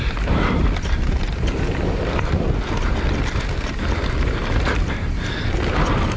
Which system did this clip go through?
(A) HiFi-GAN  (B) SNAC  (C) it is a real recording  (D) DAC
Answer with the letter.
C